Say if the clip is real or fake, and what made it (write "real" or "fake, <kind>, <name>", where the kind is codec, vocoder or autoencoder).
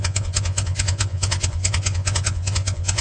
fake, vocoder, Vocos